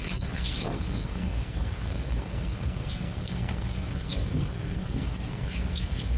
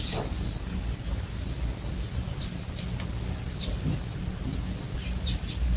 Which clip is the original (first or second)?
second